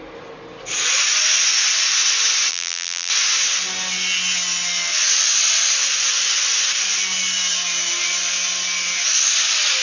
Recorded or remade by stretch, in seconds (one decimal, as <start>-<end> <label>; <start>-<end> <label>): 0.0-2.5 recorded; 2.5-3.1 remade; 3.1-9.8 recorded